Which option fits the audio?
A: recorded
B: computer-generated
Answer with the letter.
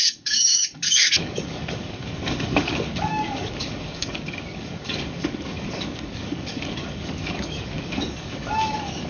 B